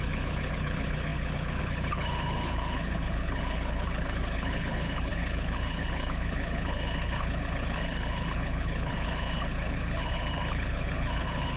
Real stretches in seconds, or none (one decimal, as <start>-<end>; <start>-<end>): none